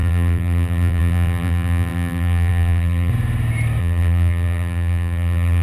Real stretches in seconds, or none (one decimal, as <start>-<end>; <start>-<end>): 3.1-3.8